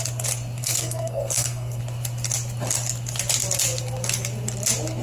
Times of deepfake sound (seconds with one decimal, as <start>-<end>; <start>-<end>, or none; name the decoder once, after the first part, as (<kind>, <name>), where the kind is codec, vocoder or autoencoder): 0.6-1.8 (codec, SNAC)